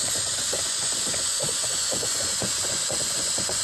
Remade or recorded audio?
remade